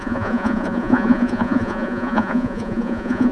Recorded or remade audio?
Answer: remade